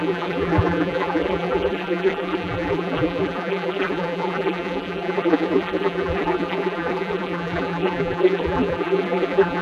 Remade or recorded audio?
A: remade